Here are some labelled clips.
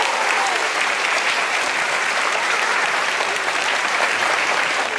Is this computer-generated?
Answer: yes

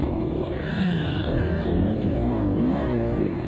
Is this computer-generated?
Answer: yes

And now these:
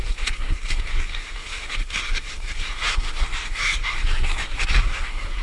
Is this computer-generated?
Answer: yes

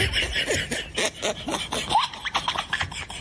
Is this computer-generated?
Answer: no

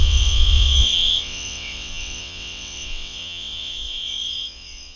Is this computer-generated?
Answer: yes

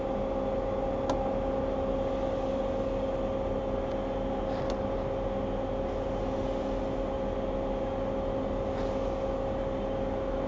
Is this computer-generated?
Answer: no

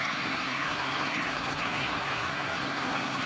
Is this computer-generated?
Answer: yes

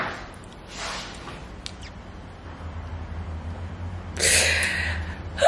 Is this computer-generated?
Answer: no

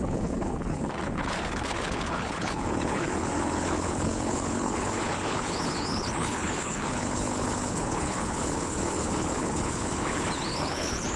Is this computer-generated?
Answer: yes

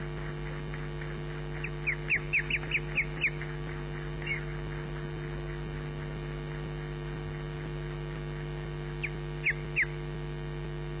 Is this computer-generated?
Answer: no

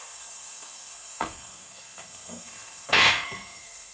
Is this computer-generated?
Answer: yes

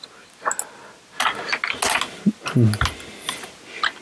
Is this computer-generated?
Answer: no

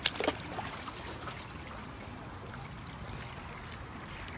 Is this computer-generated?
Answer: no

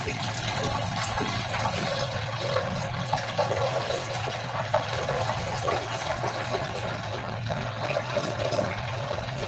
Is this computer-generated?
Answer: yes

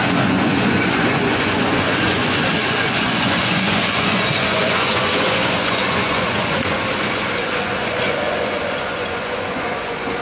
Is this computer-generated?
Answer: yes